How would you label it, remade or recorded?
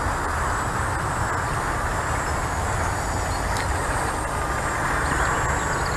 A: recorded